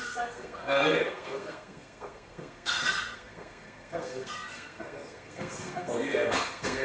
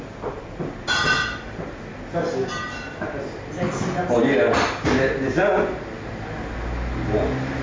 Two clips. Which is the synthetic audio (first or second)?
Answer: first